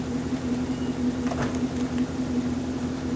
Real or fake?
real